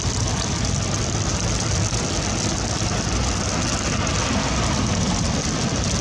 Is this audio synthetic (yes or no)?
no